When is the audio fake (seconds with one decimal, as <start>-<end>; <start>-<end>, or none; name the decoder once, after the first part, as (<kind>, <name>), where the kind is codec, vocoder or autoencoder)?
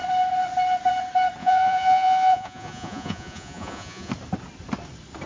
1.4-4.1 (vocoder, Vocos)